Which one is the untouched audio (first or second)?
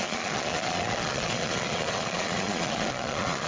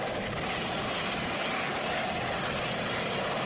second